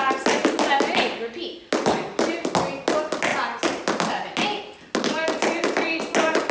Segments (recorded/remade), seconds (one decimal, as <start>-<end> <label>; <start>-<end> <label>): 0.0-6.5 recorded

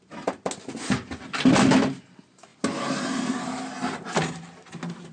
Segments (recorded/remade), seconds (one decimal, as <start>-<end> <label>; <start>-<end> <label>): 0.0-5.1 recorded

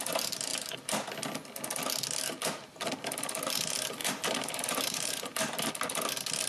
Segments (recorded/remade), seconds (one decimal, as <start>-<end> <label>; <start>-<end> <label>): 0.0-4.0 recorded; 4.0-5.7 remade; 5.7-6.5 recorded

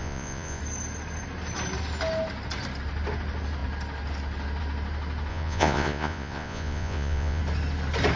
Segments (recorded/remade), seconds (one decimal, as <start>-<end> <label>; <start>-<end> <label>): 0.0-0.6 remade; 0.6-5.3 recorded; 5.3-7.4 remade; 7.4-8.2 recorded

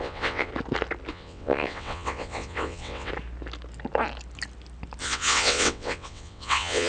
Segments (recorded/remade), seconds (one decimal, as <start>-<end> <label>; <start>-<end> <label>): 0.0-0.5 remade; 0.5-1.1 recorded; 1.1-3.1 remade; 3.1-5.0 recorded; 5.0-6.9 remade